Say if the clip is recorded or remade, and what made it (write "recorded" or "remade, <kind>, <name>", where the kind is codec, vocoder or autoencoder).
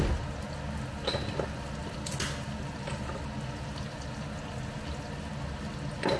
recorded